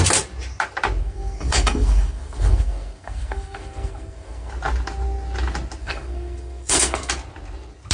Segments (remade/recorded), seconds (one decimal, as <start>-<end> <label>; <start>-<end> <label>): 0.0-1.0 recorded; 1.0-4.5 remade; 4.5-5.8 recorded; 5.8-7.1 remade; 7.1-7.9 recorded